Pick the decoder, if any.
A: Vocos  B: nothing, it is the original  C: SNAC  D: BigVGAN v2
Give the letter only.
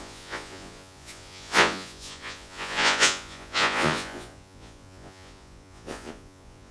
A